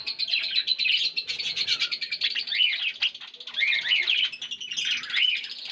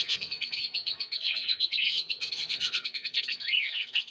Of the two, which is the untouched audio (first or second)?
first